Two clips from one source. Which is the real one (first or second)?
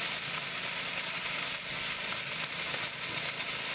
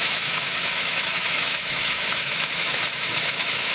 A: first